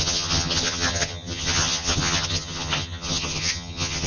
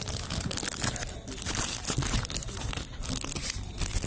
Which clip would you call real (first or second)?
second